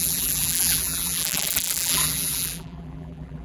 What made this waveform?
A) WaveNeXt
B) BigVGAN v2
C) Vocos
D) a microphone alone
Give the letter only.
B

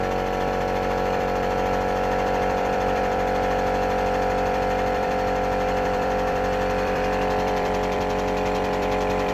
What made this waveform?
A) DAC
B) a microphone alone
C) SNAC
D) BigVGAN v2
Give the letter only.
D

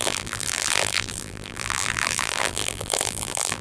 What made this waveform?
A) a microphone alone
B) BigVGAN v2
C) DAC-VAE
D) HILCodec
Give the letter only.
B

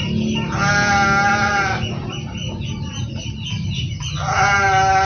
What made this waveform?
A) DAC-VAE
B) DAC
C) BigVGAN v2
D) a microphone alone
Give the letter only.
D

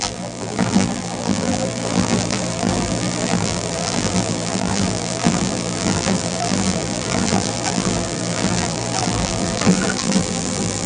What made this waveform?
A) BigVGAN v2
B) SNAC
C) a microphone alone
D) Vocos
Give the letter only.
A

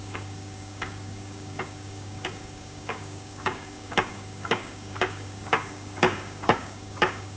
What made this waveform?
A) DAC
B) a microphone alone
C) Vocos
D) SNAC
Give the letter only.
A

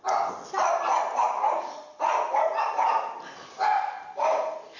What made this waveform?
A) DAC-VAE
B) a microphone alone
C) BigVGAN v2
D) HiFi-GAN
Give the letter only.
B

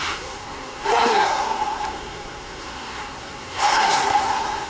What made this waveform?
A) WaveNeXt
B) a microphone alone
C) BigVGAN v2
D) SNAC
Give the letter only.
D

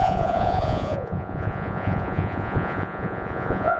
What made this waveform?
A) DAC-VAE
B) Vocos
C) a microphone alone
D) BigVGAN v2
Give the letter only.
B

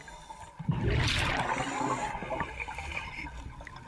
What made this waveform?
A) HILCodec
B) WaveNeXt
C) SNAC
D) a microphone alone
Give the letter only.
D